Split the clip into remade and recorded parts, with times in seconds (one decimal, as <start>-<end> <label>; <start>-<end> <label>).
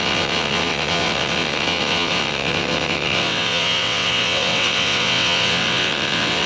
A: 0.0-6.5 remade